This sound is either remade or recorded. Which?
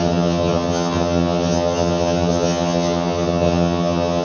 remade